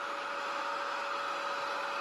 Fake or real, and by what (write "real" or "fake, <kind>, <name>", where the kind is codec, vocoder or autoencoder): real